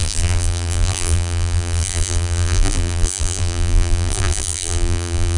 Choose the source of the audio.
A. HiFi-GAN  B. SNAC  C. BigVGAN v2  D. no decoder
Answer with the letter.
C